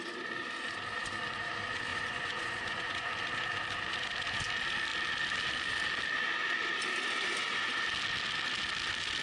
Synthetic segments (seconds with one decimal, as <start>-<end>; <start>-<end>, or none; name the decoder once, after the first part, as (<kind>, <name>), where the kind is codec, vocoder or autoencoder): 1.9-3.1 (vocoder, Vocos)